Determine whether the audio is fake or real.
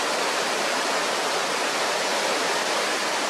real